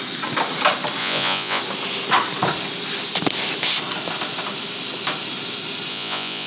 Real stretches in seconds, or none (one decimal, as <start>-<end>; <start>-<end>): 0.0-1.0; 1.6-5.9